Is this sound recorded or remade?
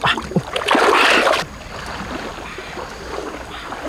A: recorded